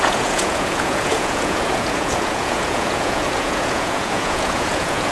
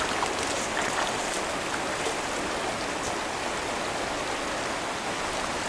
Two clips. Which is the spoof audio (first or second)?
first